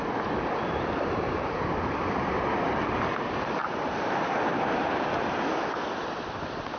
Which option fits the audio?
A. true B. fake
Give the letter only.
B